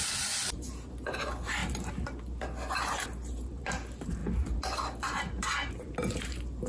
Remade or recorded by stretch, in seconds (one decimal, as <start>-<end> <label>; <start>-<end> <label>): 0.0-1.6 remade; 1.6-2.7 recorded; 2.7-4.2 remade; 4.2-5.4 recorded; 5.4-6.7 remade